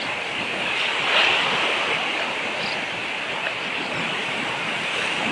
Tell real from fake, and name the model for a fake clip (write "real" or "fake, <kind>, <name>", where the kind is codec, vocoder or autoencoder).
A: real